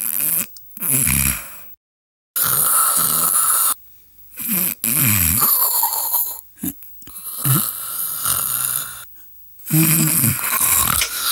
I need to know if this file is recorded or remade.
recorded